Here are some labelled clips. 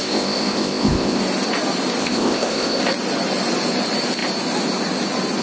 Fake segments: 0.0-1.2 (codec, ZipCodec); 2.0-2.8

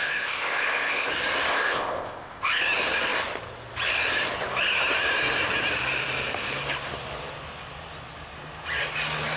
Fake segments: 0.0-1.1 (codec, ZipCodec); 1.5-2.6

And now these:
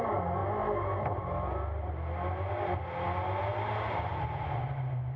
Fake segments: none